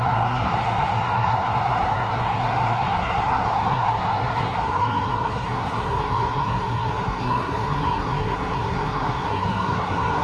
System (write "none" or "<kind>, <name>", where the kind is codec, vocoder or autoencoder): codec, SNAC